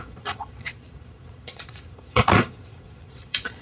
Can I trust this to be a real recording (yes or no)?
no